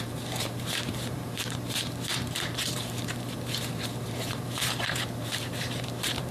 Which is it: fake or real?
fake